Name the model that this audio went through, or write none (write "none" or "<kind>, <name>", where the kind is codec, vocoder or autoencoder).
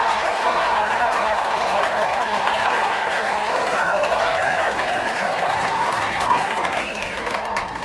codec, SNAC